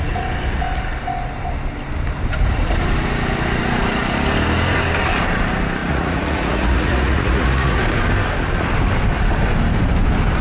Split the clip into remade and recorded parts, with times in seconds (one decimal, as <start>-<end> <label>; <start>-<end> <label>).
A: 0.0-5.8 recorded; 5.8-7.8 remade; 7.8-10.4 recorded